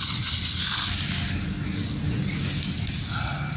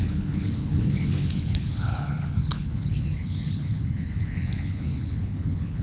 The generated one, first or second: second